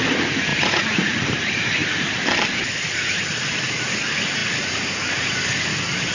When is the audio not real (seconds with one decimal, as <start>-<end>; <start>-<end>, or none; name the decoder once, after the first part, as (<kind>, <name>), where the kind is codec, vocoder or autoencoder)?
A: 0.5-1.2 (vocoder, Vocos)